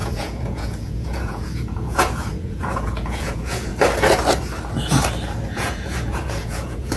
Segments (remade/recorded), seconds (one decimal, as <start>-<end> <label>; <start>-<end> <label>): 0.0-3.7 remade; 3.7-5.5 recorded; 5.5-7.0 remade